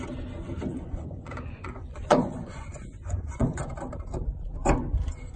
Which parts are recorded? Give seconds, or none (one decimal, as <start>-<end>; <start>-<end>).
0.0-0.7; 3.6-5.4